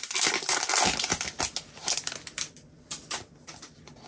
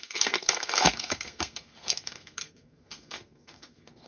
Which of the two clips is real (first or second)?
first